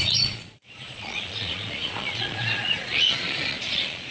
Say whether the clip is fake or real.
fake